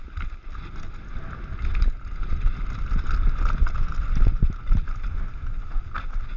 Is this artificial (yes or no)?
no